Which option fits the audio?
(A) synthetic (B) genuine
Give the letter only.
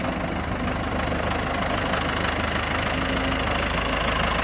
B